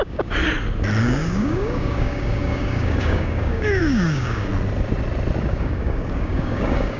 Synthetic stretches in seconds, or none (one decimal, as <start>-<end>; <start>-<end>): 0.0-0.4; 1.0-4.5; 5.4-7.0